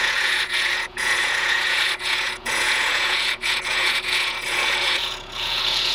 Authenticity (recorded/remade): remade